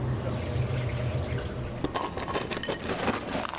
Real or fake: real